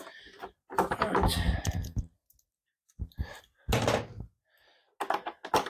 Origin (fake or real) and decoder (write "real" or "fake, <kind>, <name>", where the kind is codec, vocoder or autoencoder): real